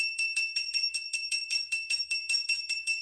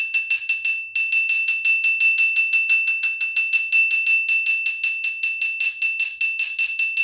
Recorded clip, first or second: second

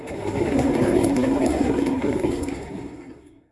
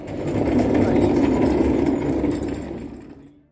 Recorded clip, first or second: second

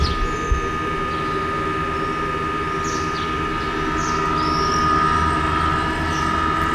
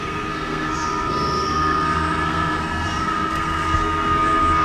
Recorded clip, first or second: first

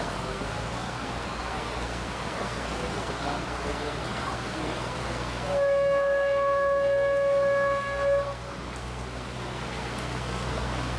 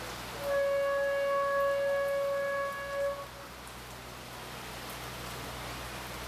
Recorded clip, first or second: second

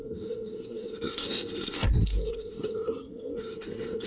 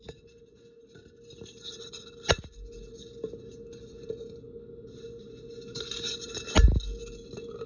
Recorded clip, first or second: second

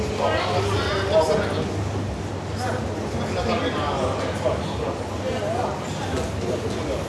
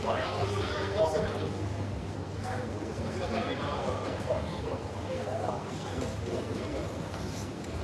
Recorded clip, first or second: first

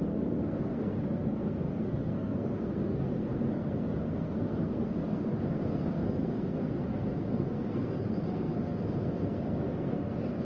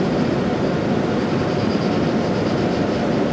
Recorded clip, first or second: second